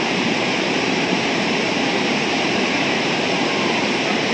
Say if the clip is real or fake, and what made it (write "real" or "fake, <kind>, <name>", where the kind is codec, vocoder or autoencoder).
fake, vocoder, BigVGAN v2